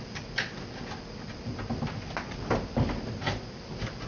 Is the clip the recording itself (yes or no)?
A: yes